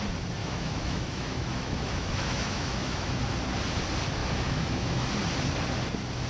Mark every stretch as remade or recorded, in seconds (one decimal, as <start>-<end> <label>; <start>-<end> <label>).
0.0-0.4 recorded; 0.4-3.2 remade; 3.2-4.2 recorded; 4.2-5.1 remade; 5.1-6.3 recorded